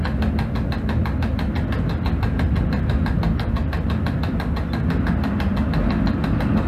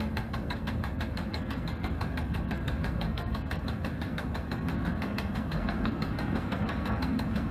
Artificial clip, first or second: second